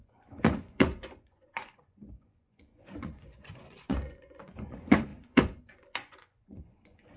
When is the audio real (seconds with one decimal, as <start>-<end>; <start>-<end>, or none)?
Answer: none